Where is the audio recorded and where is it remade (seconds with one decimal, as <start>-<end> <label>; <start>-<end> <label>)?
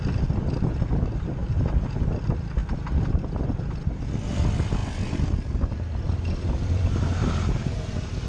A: 0.0-4.8 recorded; 4.8-8.3 remade